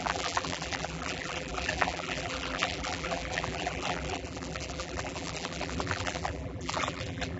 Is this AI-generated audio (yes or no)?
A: yes